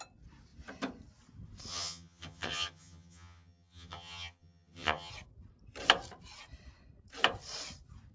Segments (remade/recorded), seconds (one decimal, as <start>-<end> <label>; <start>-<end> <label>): 0.0-1.7 recorded; 1.7-5.1 remade; 5.1-8.1 recorded